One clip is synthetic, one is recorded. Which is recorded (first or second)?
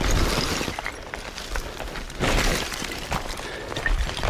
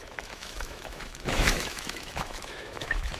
first